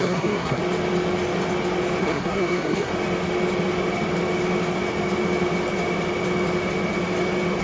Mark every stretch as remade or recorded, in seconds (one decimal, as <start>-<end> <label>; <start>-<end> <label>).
0.0-0.6 remade; 0.6-2.0 recorded; 2.0-2.9 remade; 2.9-7.6 recorded